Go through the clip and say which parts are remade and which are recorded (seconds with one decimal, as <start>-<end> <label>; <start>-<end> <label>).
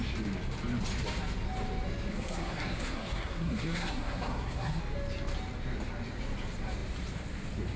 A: 0.0-2.1 recorded; 2.1-4.8 remade; 4.8-7.8 recorded